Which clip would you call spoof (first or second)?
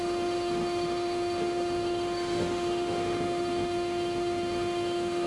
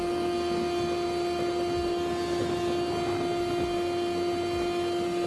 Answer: first